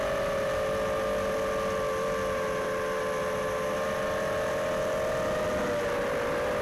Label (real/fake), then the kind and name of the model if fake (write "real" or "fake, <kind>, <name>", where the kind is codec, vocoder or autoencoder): real